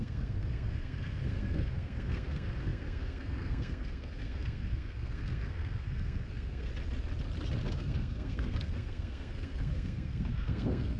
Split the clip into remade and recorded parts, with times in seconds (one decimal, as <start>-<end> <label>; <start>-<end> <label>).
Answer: 0.0-6.7 remade; 6.7-7.7 recorded; 7.7-11.0 remade